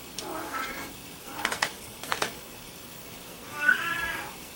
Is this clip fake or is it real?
fake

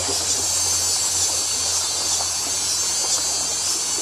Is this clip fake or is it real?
real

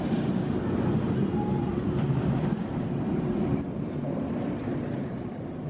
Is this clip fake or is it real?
fake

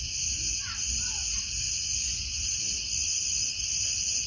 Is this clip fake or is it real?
real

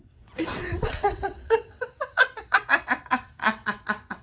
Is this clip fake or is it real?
fake